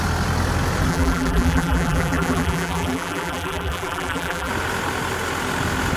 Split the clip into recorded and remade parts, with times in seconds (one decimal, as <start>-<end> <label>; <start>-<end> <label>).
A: 0.0-0.9 recorded; 0.9-4.5 remade; 4.5-6.0 recorded

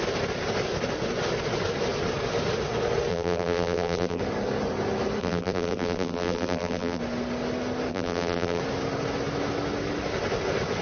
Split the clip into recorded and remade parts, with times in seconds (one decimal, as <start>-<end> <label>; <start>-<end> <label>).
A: 0.0-3.1 recorded; 3.1-4.2 remade; 4.2-5.2 recorded; 5.2-7.0 remade; 7.0-7.9 recorded; 7.9-8.6 remade; 8.6-10.8 recorded

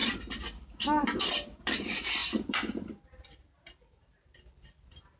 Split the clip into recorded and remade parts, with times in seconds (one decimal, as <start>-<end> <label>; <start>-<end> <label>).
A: 0.0-5.2 remade

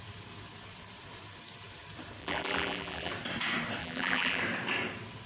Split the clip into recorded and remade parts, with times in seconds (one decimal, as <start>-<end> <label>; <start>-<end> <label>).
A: 0.0-2.2 recorded; 2.2-3.1 remade; 3.1-3.8 recorded; 3.8-4.4 remade; 4.4-5.3 recorded

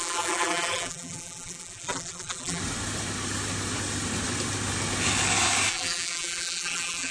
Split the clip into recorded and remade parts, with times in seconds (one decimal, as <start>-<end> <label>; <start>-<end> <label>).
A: 0.0-2.6 remade; 2.6-5.7 recorded; 5.7-7.1 remade